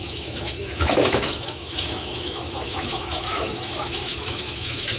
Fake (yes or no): yes